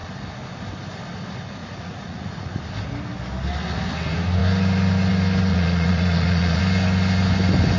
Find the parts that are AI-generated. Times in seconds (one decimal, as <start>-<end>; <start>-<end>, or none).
1.6-2.6; 5.5-6.6